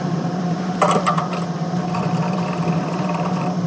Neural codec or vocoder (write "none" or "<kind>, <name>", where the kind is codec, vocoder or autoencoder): vocoder, BigVGAN v2